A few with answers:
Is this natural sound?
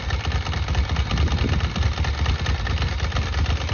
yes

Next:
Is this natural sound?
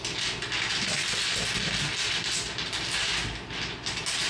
yes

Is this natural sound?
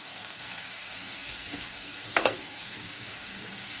no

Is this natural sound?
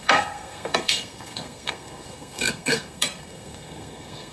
no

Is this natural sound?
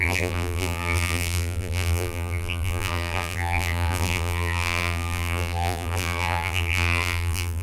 no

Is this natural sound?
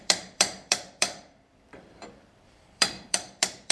no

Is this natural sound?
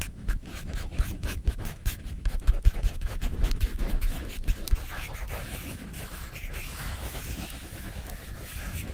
no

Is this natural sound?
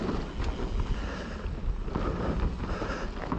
yes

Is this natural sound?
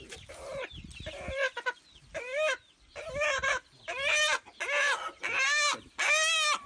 yes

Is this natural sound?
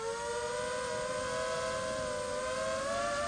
yes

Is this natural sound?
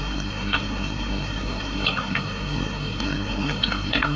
no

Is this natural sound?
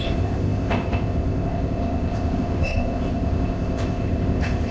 no